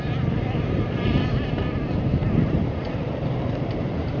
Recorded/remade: remade